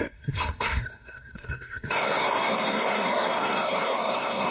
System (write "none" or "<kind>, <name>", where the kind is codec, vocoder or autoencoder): codec, SNAC